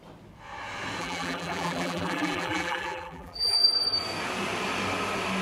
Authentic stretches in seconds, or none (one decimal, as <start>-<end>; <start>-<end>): 0.0-1.0; 3.6-5.4